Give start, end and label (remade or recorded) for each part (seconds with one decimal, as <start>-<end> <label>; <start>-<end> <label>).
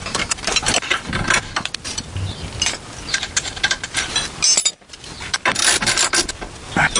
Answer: 0.0-7.0 recorded